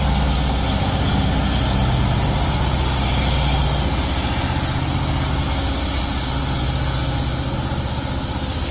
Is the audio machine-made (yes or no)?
no